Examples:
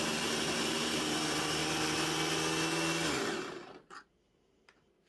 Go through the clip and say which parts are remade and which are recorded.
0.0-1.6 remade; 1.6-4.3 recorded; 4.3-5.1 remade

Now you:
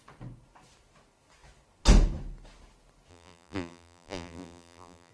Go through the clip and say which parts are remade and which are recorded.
0.0-3.1 recorded; 3.1-5.1 remade

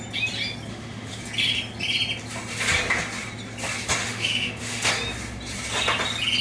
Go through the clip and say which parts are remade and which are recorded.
0.0-0.7 recorded; 0.7-1.2 remade; 1.2-4.0 recorded; 4.0-4.9 remade; 4.9-6.4 recorded

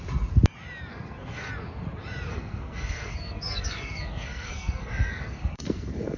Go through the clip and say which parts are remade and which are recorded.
0.0-0.9 recorded; 0.9-1.5 remade; 1.5-2.3 recorded; 2.3-6.2 remade

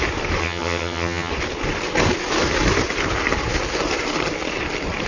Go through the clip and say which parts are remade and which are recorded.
0.0-0.4 recorded; 0.4-1.3 remade; 1.3-5.1 recorded

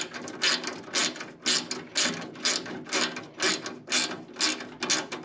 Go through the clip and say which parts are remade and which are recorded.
0.0-5.2 recorded